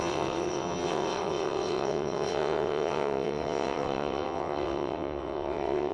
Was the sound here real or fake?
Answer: fake